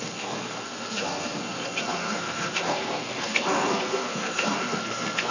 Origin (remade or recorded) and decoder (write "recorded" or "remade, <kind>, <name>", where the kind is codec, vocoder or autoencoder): remade, codec, SNAC